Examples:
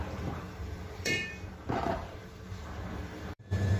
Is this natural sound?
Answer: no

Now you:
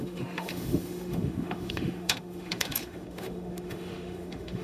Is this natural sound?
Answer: no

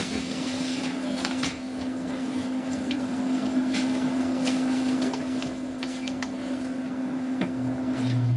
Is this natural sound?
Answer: no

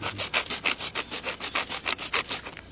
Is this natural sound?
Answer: yes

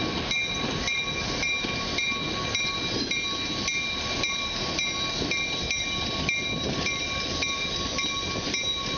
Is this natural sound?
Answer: yes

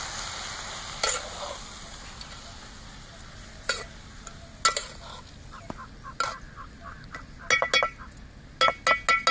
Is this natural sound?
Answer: yes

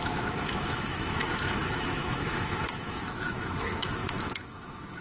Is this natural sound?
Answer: no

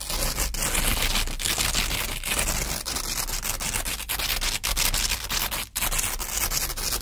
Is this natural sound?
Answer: yes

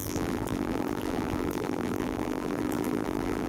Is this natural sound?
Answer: no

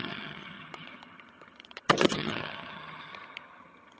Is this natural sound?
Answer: no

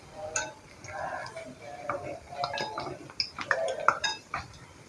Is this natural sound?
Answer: yes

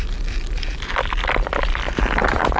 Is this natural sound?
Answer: no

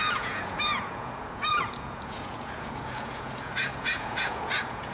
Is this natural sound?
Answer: no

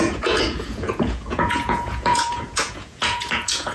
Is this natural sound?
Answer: no